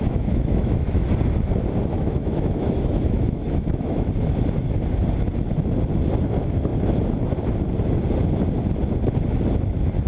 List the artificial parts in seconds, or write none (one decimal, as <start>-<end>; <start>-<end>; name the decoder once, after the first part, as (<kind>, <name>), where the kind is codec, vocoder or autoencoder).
0.0-1.1 (autoencoder, DAC-VAE); 1.9-4.1